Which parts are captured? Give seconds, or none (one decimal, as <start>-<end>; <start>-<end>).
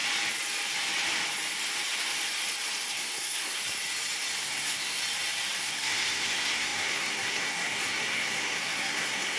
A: 0.0-2.9; 3.6-4.4; 5.0-5.6